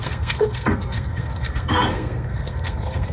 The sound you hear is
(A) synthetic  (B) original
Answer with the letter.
A